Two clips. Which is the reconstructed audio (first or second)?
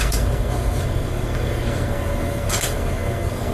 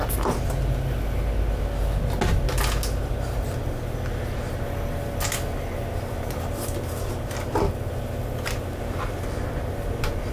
first